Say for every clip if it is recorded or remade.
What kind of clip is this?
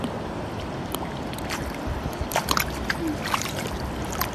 recorded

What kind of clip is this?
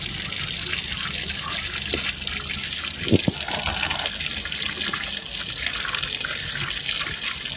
recorded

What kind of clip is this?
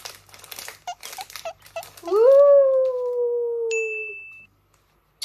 recorded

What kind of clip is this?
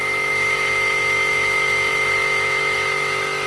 remade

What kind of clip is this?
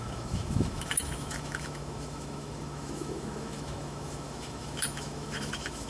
remade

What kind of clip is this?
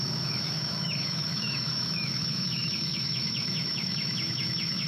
remade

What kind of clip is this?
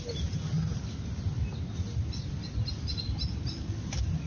recorded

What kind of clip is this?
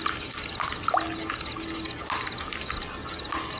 recorded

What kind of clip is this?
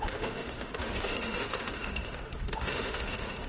remade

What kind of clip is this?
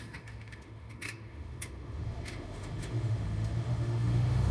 remade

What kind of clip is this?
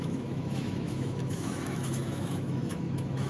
remade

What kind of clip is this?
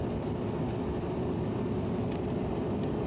recorded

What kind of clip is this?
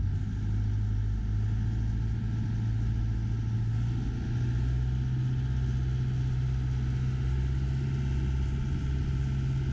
recorded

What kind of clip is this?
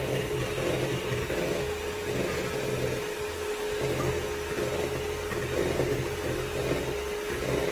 recorded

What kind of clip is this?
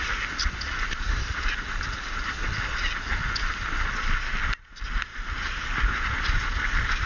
recorded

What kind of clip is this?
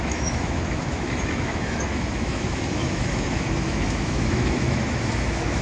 remade